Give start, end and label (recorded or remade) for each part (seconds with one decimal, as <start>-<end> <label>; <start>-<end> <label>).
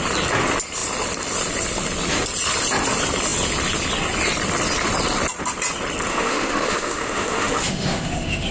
0.0-6.1 recorded; 6.1-8.5 remade